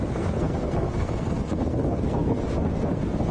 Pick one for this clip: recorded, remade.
remade